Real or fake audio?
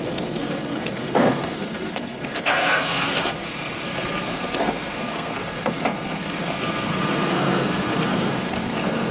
fake